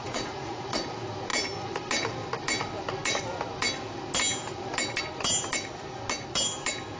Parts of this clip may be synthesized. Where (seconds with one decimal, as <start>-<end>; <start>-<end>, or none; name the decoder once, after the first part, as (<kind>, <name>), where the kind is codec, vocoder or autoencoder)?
0.0-0.8 (vocoder, Vocos)